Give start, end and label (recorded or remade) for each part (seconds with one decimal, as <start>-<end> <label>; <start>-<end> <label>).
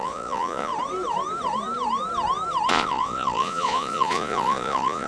0.0-0.7 remade; 0.7-2.7 recorded; 2.7-5.1 remade